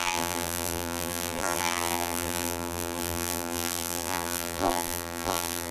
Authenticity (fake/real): fake